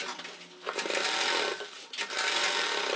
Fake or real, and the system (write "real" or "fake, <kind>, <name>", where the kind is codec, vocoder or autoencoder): real